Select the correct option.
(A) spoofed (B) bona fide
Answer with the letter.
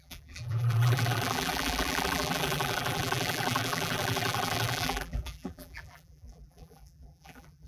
A